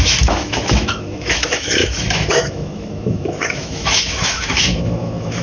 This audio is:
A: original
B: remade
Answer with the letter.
B